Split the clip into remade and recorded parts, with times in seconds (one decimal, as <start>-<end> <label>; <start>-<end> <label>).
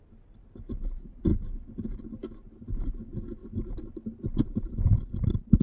0.0-5.6 recorded